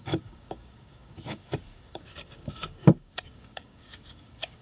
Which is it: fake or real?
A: fake